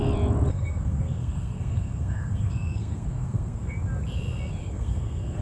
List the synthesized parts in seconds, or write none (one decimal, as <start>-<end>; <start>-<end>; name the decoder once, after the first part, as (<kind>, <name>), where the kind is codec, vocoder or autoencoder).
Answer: 0.5-3.7 (codec, SNAC); 4.6-5.4